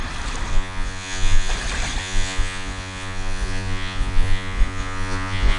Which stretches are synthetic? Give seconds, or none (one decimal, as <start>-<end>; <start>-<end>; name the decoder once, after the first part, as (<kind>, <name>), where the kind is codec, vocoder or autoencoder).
0.5-1.5 (vocoder, Vocos); 2.0-5.6